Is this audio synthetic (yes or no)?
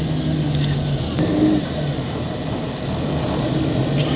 no